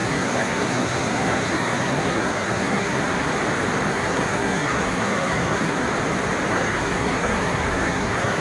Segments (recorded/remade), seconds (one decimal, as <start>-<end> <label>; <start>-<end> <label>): 0.0-3.3 remade; 3.3-3.9 recorded; 3.9-5.9 remade; 5.9-6.5 recorded; 6.5-8.4 remade